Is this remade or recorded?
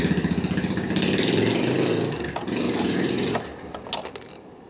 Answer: recorded